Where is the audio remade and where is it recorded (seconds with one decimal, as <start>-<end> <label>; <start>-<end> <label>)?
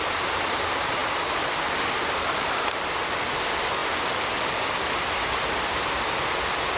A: 0.0-6.8 recorded